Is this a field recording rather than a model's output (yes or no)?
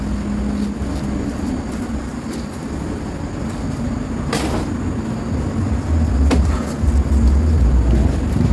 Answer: yes